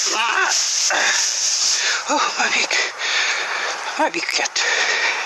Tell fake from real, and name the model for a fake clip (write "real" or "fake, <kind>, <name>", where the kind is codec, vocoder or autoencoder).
fake, vocoder, BigVGAN v2